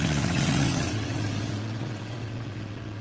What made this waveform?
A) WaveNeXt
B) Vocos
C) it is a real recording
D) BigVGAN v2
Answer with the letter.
A